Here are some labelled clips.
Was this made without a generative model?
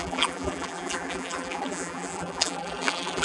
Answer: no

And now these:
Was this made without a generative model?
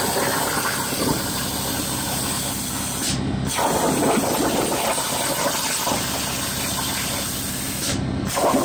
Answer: yes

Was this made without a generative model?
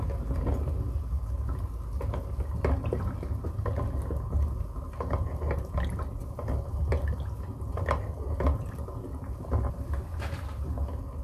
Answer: yes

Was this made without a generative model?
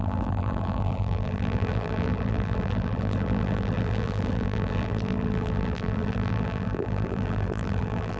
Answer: no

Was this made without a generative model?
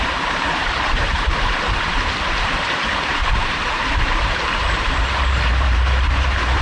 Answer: no